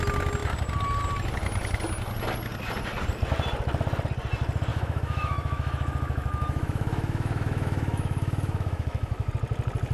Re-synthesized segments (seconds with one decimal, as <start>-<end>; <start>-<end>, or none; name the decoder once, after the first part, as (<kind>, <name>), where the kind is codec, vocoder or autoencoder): 4.7-9.3 (autoencoder, DAC-VAE)